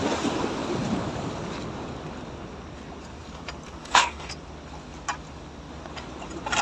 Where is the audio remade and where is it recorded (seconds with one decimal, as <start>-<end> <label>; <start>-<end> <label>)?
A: 0.0-3.8 recorded; 3.8-4.3 remade; 4.3-6.6 recorded

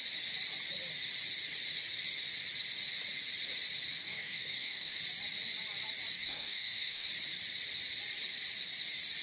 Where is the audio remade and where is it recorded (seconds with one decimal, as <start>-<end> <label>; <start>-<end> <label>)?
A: 0.0-4.0 recorded; 4.0-5.0 remade; 5.0-6.2 recorded; 6.2-7.1 remade; 7.1-9.2 recorded

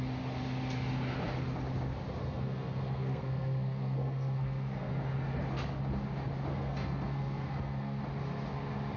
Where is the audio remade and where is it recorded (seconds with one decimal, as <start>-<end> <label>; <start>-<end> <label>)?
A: 0.0-2.2 recorded; 2.2-4.9 remade; 4.9-6.5 recorded; 6.5-8.0 remade; 8.0-9.0 recorded

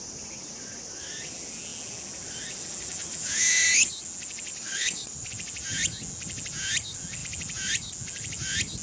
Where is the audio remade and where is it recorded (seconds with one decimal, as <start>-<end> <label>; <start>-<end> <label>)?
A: 0.0-4.5 recorded; 4.5-5.3 remade; 5.3-8.8 recorded

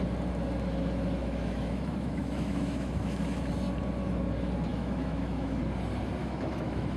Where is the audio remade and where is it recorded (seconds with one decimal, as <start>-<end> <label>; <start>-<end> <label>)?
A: 0.0-1.2 recorded; 1.2-3.5 remade; 3.5-4.7 recorded; 4.7-5.6 remade; 5.6-6.2 recorded; 6.2-7.0 remade

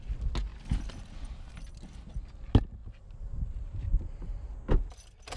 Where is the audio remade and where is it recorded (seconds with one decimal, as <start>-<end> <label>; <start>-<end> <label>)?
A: 0.0-5.4 recorded